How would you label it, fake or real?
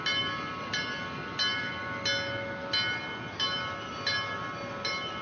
real